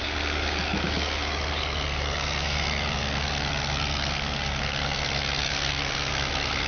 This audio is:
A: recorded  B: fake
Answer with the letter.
B